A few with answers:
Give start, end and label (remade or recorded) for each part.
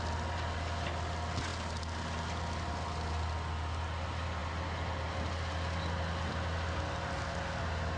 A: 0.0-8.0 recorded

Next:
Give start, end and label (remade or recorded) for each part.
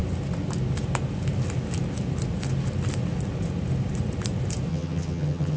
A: 0.0-4.7 recorded; 4.7-5.6 remade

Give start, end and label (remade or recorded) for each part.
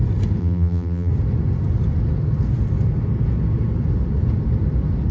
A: 0.0-0.4 recorded; 0.4-1.1 remade; 1.1-5.1 recorded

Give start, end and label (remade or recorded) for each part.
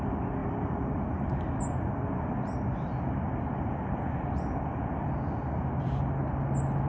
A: 0.0-0.4 recorded; 0.4-1.5 remade; 1.5-6.9 recorded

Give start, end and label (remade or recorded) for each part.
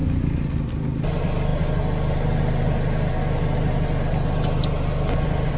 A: 0.0-5.6 recorded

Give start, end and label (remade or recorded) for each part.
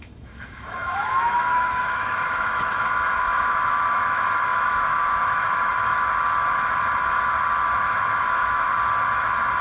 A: 0.0-5.7 remade; 5.7-7.8 recorded; 7.8-8.7 remade; 8.7-9.6 recorded